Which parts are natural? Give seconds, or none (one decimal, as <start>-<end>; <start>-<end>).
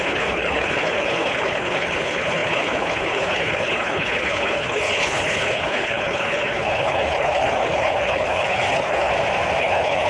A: 9.1-9.6